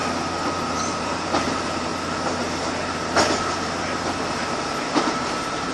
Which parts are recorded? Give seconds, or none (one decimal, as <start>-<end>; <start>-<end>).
0.0-0.6; 1.9-5.0